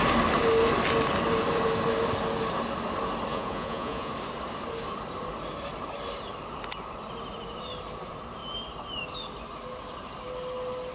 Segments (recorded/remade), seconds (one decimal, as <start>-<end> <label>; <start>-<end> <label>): 0.0-3.3 recorded; 3.3-4.1 remade; 4.1-10.9 recorded